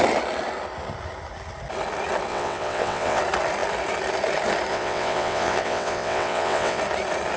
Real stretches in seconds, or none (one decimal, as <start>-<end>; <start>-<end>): 0.0-2.3; 3.2-4.7; 6.8-7.4